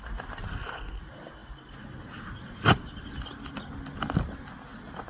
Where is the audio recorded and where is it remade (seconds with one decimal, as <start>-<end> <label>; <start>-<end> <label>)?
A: 0.0-0.5 recorded; 0.5-1.0 remade; 1.0-5.1 recorded